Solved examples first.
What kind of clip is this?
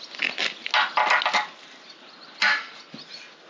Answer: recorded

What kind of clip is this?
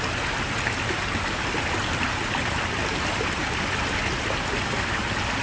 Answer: recorded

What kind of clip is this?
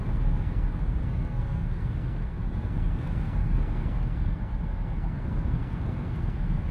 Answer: remade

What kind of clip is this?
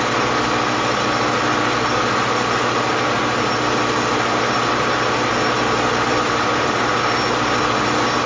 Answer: recorded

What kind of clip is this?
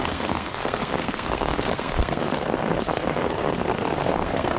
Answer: remade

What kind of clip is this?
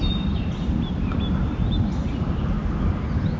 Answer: recorded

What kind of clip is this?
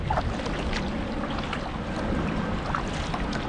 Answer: recorded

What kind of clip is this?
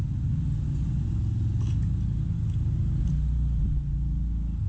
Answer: recorded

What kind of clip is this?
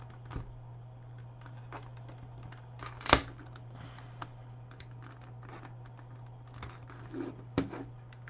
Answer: recorded